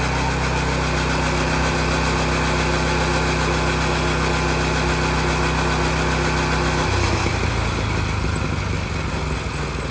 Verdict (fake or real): real